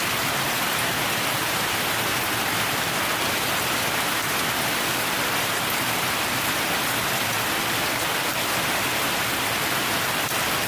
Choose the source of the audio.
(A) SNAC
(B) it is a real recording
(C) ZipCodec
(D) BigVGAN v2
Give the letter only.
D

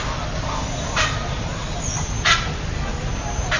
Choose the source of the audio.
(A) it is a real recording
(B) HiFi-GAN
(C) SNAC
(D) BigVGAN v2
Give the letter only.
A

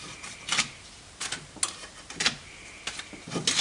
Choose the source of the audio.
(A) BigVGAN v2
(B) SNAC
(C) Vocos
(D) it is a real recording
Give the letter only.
D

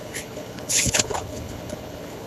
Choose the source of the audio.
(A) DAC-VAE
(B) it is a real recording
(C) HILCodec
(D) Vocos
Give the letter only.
C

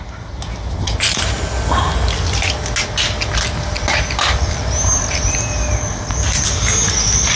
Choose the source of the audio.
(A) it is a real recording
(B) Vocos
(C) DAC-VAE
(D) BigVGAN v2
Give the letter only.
A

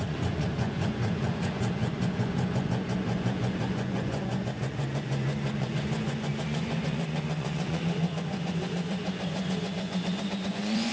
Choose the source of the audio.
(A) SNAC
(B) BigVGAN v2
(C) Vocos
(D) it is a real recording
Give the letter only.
C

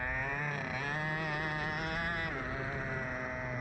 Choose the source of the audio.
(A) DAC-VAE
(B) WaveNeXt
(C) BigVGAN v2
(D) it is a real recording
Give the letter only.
D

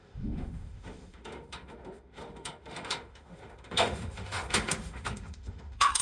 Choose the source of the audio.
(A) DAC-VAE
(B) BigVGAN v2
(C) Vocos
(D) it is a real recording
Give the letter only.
A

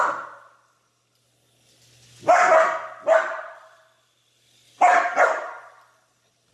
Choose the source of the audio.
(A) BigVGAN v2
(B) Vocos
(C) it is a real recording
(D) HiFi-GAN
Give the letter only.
C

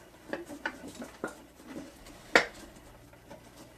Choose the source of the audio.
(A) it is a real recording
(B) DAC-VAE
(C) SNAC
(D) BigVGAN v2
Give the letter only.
A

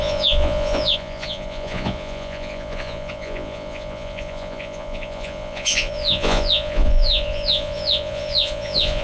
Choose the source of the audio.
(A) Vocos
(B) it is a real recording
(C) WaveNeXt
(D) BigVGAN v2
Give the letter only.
A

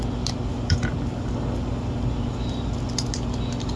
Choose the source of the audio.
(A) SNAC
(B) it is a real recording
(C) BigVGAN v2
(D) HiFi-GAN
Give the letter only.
B